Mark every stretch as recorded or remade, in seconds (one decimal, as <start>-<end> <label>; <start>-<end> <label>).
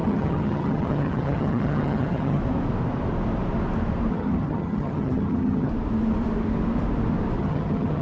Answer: 0.0-2.4 remade; 2.4-4.1 recorded; 4.1-5.7 remade; 5.7-7.4 recorded; 7.4-8.0 remade